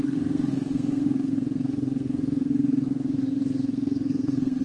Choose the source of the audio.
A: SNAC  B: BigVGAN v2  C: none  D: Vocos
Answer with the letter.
A